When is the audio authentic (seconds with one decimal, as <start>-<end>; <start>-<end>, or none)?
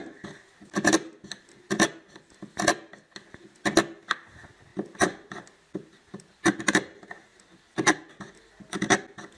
0.0-4.7; 6.3-9.4